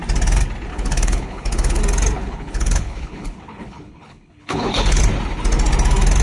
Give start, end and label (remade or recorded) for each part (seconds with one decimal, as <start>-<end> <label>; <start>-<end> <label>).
0.0-0.7 recorded; 0.7-1.8 remade; 1.8-2.2 recorded; 2.2-5.0 remade; 5.0-6.2 recorded